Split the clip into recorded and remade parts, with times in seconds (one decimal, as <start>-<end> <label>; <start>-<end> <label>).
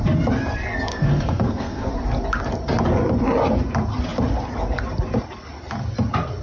0.0-0.9 recorded; 0.9-1.9 remade; 1.9-6.4 recorded